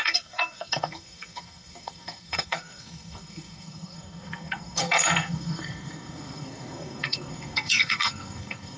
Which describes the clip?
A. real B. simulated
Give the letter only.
B